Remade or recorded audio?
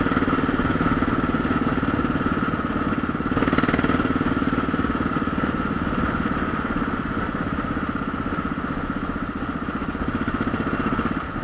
recorded